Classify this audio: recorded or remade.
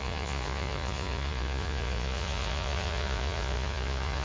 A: remade